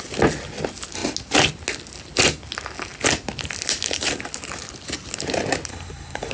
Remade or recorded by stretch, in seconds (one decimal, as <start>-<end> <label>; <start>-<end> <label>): 0.0-5.7 recorded; 5.7-6.3 remade